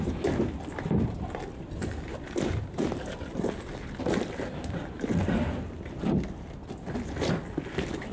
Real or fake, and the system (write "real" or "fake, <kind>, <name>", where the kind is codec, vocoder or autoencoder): fake, vocoder, BigVGAN v2